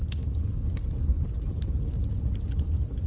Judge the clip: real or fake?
real